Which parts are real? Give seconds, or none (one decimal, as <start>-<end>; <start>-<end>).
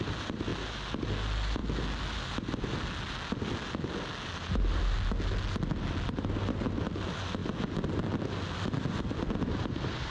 0.0-10.1